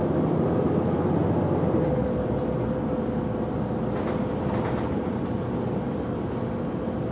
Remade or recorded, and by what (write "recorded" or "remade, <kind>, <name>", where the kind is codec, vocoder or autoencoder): recorded